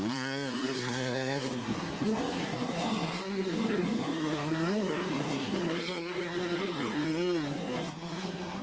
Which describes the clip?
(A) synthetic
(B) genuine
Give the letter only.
A